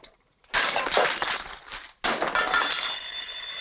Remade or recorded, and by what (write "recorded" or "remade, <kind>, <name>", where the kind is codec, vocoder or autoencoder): recorded